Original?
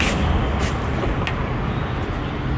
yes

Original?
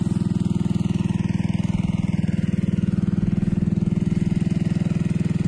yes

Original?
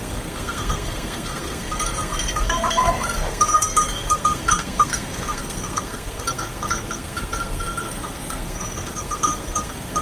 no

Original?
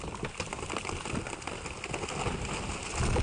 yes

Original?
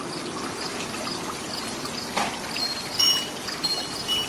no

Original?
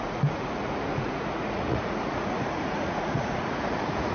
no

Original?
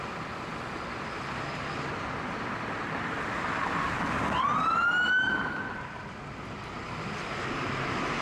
yes